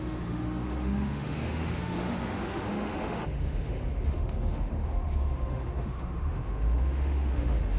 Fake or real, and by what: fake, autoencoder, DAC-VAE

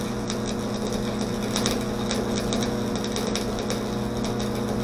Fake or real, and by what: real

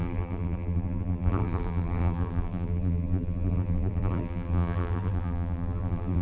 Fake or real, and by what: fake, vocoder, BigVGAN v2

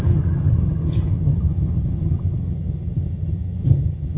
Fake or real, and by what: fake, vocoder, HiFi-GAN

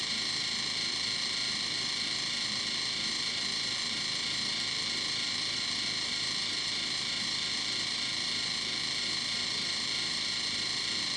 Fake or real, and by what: fake, vocoder, BigVGAN v2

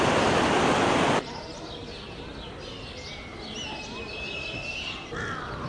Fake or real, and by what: real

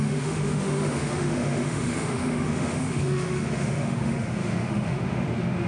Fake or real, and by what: fake, autoencoder, DAC-VAE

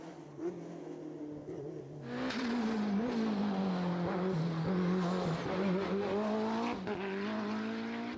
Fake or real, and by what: real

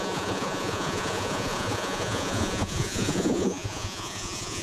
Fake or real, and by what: fake, vocoder, Vocos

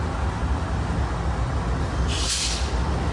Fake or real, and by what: real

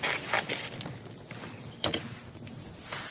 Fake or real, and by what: real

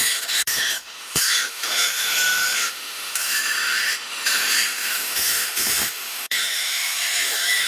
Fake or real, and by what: fake, autoencoder, DAC-VAE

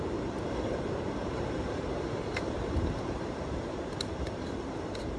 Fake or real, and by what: fake, vocoder, BigVGAN v2